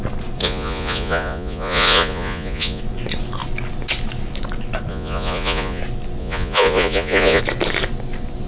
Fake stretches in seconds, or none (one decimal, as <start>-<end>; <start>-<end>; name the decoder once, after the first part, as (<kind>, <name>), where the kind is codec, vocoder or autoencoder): 0.4-2.8 (vocoder, Vocos); 4.9-5.8; 6.2-7.4